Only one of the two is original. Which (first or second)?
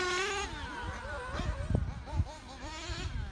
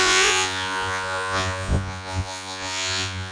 first